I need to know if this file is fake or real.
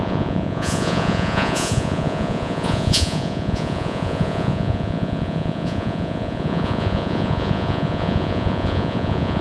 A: fake